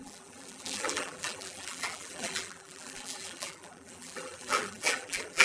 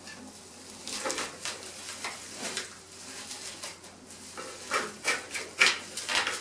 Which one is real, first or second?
second